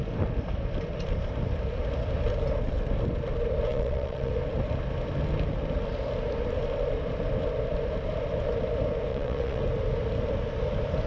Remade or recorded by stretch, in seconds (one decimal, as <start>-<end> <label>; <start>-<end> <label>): 0.0-3.7 recorded; 3.7-4.3 remade; 4.3-9.1 recorded; 9.1-9.6 remade; 9.6-11.1 recorded